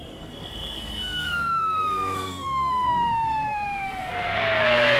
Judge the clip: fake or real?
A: fake